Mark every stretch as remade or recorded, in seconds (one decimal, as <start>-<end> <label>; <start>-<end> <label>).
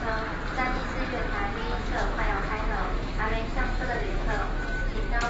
0.0-1.6 recorded; 1.6-4.8 remade; 4.8-5.3 recorded